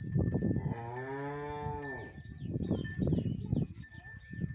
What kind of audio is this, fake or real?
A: real